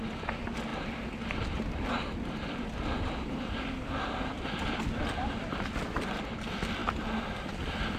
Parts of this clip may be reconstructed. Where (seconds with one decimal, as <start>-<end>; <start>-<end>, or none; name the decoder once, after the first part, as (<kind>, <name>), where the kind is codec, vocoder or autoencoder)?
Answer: none